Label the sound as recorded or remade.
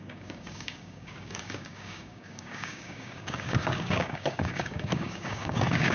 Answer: remade